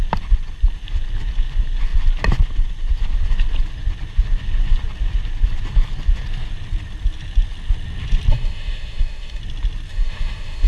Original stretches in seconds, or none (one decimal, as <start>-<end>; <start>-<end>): 0.0-8.3; 9.4-9.9